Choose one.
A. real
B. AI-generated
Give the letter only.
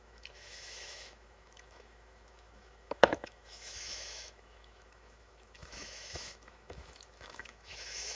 B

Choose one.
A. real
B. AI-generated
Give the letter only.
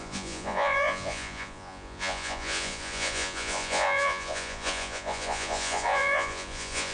B